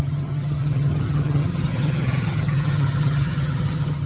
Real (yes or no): no